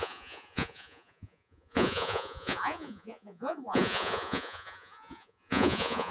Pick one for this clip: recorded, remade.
remade